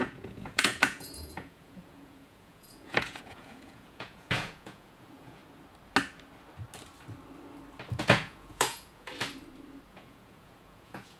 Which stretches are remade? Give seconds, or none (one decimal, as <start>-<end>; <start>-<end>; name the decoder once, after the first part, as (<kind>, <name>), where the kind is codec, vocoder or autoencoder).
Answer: 0.0-5.4 (vocoder, Vocos); 8.0-9.1; 9.9-11.2

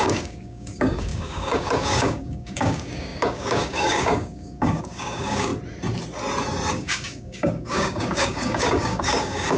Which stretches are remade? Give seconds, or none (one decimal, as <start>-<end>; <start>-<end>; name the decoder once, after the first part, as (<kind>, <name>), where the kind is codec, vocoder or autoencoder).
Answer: 0.0-5.5 (codec, DAC); 6.7-9.6

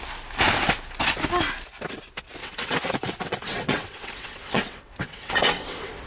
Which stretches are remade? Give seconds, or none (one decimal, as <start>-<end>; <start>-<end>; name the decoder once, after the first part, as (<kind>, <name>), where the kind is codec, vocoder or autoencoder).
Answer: 2.4-6.1 (vocoder, WaveNeXt)

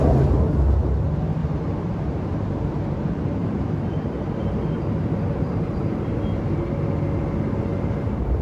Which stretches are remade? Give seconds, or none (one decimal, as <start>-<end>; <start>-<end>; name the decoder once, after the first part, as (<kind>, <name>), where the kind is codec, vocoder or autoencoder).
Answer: 1.4-6.1 (vocoder, BigVGAN v2); 7.7-8.4

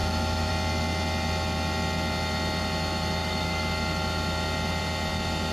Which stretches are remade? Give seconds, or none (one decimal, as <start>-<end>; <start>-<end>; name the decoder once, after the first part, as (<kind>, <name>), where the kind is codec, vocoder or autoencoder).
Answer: 0.0-0.5 (autoencoder, DAC-VAE); 3.2-3.7

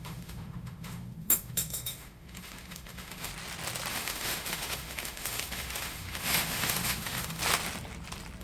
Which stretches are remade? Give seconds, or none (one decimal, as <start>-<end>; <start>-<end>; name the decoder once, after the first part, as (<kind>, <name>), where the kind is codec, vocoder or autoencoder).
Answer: 0.0-3.3 (autoencoder, DAC-VAE); 3.9-7.4

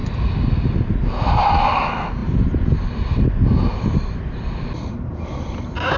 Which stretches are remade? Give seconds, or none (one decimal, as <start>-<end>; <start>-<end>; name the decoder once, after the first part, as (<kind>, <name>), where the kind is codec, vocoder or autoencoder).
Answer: none